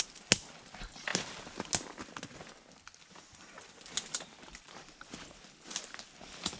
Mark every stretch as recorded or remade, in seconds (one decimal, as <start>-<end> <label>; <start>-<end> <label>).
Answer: 0.0-6.6 recorded